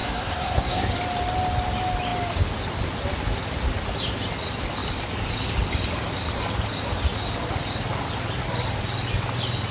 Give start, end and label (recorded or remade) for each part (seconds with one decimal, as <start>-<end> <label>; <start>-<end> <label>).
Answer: 0.0-0.9 remade; 0.9-9.7 recorded